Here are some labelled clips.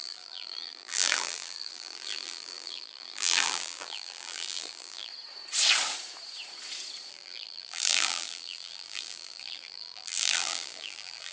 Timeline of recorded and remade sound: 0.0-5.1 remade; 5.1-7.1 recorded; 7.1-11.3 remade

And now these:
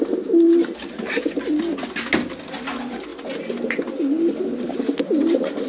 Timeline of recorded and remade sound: 0.0-5.7 recorded

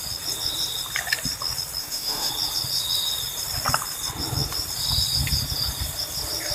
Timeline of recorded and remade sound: 0.0-1.8 recorded; 1.8-2.3 remade; 2.3-6.5 recorded

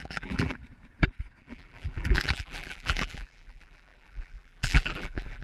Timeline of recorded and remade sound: 0.0-0.6 remade; 0.6-1.4 recorded; 1.4-5.4 remade

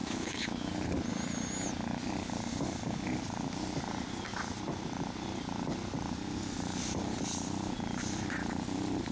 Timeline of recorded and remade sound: 0.0-0.7 remade; 0.7-9.1 recorded

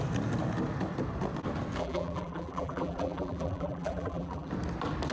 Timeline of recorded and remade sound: 0.0-1.8 recorded; 1.8-4.5 remade; 4.5-5.1 recorded

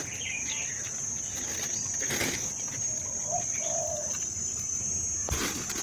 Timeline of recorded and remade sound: 0.0-5.8 recorded

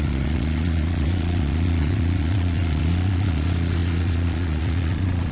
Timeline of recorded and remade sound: 0.0-5.3 remade